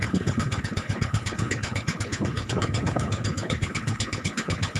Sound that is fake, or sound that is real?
fake